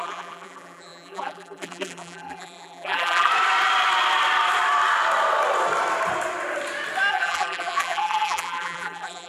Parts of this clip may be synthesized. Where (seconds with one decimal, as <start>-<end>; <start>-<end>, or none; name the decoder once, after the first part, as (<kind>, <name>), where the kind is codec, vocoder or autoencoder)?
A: 0.0-3.3 (vocoder, BigVGAN v2); 7.1-9.3